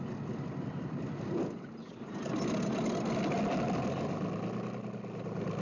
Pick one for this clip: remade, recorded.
recorded